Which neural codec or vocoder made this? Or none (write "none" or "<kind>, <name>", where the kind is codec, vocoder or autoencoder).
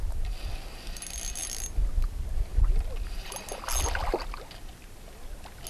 none